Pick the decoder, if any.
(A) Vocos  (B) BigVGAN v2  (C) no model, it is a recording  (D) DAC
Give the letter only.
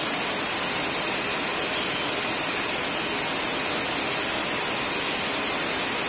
C